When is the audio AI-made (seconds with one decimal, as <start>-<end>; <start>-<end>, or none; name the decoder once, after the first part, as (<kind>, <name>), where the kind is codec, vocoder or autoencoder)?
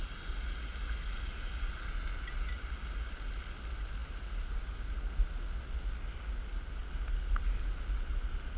none